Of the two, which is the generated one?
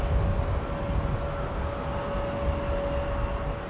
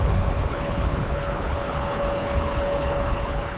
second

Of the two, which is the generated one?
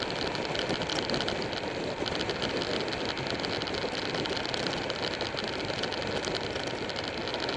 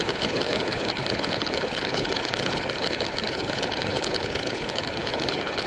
second